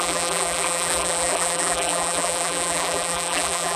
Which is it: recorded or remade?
remade